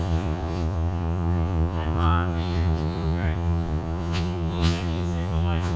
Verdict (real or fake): fake